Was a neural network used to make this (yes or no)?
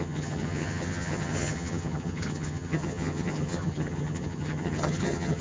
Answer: yes